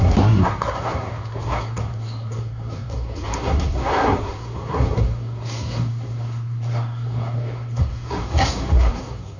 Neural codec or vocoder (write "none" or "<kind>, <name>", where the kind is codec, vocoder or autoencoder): codec, SNAC